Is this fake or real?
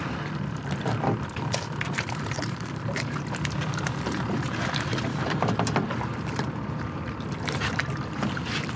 fake